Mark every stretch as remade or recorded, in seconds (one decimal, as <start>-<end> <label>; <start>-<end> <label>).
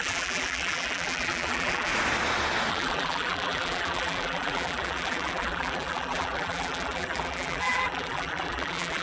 0.0-1.9 remade; 1.9-2.7 recorded; 2.7-9.0 remade